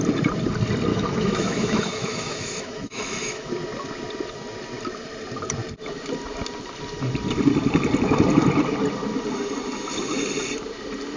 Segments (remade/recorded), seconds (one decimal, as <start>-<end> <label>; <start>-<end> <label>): 0.0-0.9 recorded; 0.9-3.5 remade; 3.5-11.2 recorded